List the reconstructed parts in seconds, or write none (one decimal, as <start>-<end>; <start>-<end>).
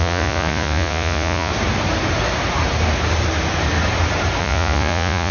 0.0-1.5; 4.4-5.3